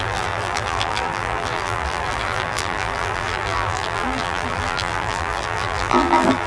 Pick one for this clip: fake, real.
fake